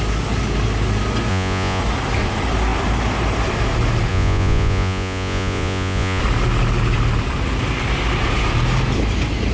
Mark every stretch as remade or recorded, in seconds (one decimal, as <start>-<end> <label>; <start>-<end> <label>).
0.0-1.3 recorded; 1.3-1.8 remade; 1.8-4.1 recorded; 4.1-6.2 remade; 6.2-9.5 recorded